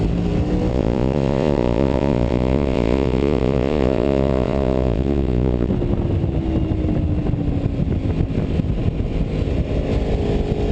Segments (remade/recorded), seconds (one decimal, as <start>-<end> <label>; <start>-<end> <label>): 0.0-0.7 recorded; 0.7-5.7 remade; 5.7-10.7 recorded